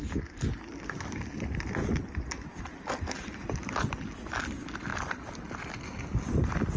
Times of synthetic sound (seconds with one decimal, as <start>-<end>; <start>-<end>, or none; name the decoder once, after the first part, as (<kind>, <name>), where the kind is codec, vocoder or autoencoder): none